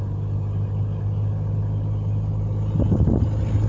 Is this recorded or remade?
recorded